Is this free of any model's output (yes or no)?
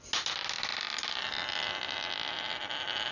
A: yes